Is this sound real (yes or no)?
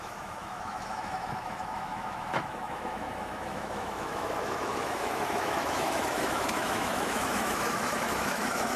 no